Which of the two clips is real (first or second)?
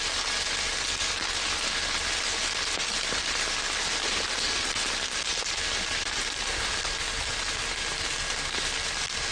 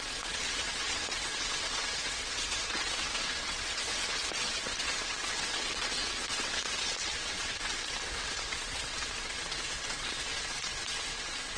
first